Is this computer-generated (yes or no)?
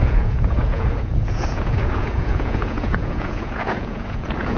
yes